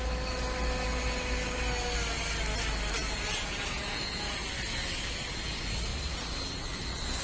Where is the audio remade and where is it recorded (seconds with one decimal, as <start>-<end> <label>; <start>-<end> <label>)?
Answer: 0.0-3.0 recorded; 3.0-4.4 remade; 4.4-7.2 recorded

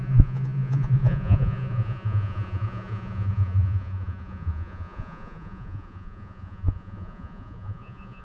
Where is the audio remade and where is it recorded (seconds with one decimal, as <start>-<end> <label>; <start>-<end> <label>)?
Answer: 0.0-8.2 remade

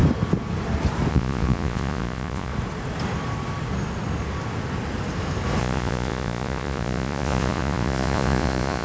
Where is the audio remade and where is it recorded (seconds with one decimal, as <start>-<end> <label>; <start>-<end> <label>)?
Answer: 0.0-1.1 recorded; 1.1-2.5 remade; 2.5-5.6 recorded; 5.6-8.8 remade

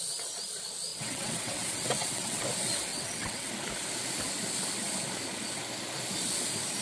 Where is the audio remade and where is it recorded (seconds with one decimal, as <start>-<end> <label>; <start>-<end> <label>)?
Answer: 0.0-0.9 recorded; 0.9-2.4 remade; 2.4-2.9 recorded; 2.9-3.5 remade; 3.5-6.8 recorded

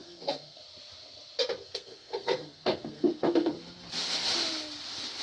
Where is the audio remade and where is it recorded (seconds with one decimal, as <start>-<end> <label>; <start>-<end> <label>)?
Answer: 0.0-0.6 remade; 0.6-1.6 recorded; 1.6-3.5 remade; 3.5-5.2 recorded